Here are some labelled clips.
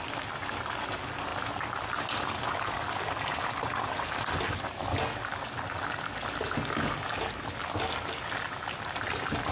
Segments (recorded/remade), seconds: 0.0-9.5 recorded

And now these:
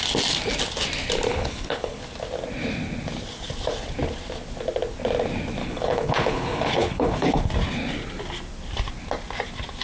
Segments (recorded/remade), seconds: 0.0-1.3 recorded; 1.3-2.0 remade; 2.0-5.6 recorded; 5.6-7.4 remade; 7.4-9.8 recorded

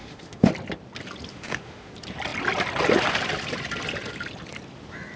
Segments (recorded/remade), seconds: 0.0-0.5 remade; 0.5-1.3 recorded; 1.3-1.9 remade; 1.9-5.2 recorded

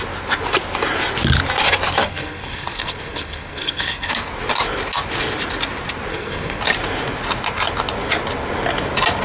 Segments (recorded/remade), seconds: 0.0-2.0 recorded; 2.0-4.1 remade; 4.1-6.1 recorded; 6.1-6.6 remade; 6.6-9.2 recorded